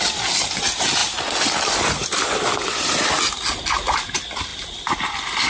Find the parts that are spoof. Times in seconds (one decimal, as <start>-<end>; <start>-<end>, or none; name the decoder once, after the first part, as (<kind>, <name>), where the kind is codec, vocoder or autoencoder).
none